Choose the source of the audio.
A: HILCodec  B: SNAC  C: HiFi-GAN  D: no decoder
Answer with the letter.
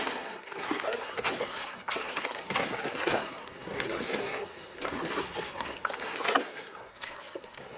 B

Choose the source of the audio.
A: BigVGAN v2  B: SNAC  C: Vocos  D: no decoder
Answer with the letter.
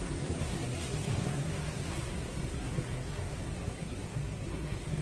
B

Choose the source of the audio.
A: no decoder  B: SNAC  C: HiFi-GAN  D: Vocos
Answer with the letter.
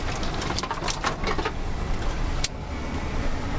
A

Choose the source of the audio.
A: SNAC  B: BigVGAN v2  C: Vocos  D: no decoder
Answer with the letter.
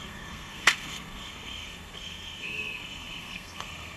A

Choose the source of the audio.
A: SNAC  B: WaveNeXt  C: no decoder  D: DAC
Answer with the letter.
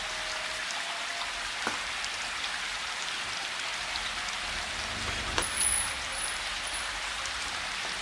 C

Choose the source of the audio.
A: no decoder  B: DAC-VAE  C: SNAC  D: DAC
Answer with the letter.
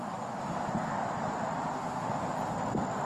A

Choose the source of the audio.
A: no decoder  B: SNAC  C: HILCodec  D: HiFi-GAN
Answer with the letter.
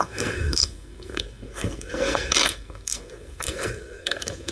B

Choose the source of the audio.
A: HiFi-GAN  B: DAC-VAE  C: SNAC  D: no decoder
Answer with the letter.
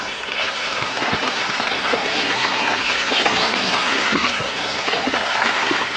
C